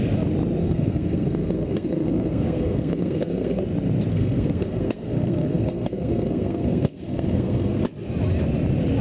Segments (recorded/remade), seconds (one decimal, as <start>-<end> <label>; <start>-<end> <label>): 0.0-0.6 recorded; 0.6-3.6 remade; 3.6-4.1 recorded; 4.1-7.8 remade; 7.8-9.0 recorded